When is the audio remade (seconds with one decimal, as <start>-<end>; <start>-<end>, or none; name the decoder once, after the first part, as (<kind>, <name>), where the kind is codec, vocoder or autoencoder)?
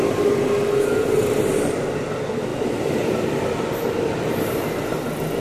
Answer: 2.5-3.8 (vocoder, BigVGAN v2)